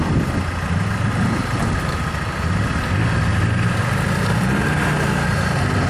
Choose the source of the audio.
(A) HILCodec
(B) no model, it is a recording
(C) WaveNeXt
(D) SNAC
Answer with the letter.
B